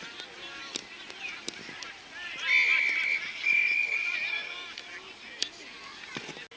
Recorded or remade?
recorded